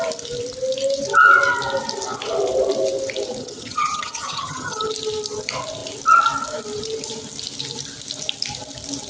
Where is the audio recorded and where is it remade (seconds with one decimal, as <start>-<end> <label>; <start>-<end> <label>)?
0.0-3.4 recorded; 3.4-4.9 remade; 4.9-9.1 recorded